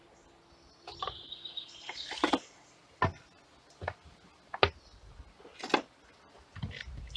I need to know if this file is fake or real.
real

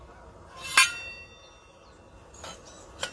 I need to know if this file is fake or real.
real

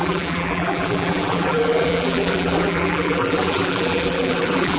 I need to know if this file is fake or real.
fake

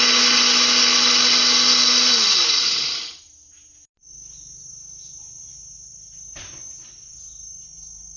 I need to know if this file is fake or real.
real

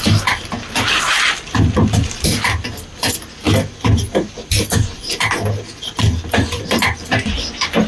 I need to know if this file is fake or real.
real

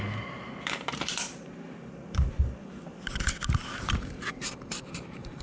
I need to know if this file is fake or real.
fake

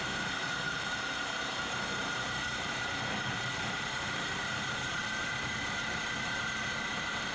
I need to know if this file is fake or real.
fake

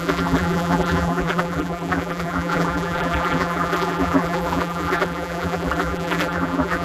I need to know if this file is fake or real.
fake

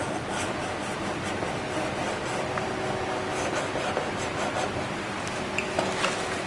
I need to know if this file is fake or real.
real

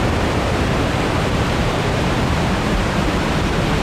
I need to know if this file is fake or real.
fake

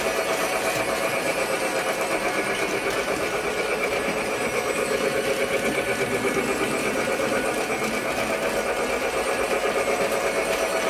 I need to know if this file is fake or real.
real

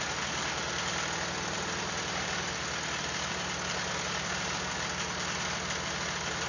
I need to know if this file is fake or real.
real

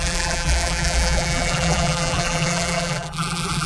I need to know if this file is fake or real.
fake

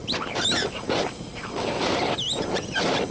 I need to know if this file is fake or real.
fake